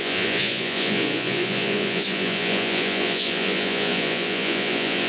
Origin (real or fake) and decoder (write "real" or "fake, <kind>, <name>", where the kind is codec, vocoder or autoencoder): fake, vocoder, Vocos